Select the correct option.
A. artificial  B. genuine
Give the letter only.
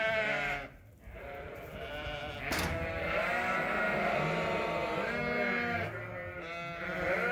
B